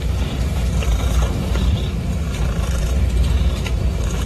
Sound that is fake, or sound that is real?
fake